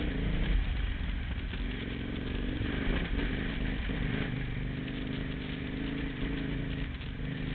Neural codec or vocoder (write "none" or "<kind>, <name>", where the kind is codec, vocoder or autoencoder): none